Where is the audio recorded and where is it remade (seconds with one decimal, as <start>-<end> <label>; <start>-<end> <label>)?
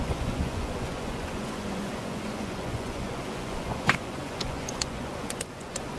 0.0-6.0 remade